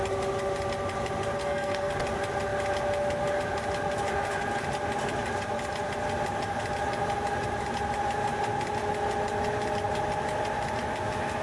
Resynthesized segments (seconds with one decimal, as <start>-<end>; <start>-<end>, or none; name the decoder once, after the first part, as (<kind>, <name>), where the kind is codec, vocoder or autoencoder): 1.4-1.9 (codec, SNAC)